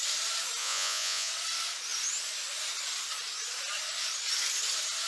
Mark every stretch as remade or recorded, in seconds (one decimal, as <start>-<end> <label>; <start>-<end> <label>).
0.0-0.6 recorded; 0.6-1.3 remade; 1.3-5.1 recorded